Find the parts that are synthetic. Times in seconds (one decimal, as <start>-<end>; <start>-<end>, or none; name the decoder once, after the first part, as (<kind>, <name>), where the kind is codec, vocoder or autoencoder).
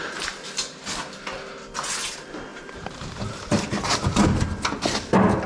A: 2.5-3.5 (vocoder, BigVGAN v2)